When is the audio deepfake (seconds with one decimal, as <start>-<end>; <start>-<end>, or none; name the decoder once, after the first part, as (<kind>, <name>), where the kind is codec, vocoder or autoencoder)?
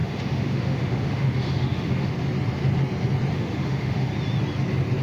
0.0-2.1 (autoencoder, DAC-VAE); 3.3-4.1